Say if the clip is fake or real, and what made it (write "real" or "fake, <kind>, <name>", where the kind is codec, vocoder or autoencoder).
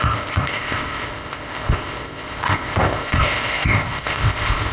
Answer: fake, codec, ZipCodec